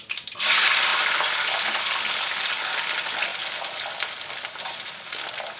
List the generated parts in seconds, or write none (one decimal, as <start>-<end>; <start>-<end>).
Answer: none